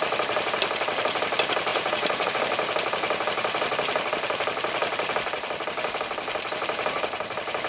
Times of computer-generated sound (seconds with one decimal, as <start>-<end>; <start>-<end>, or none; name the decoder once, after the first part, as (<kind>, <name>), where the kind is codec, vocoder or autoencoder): 1.7-2.3 (vocoder, Vocos)